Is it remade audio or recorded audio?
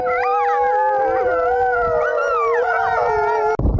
recorded